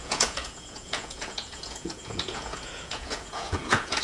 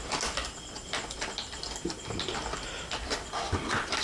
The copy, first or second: first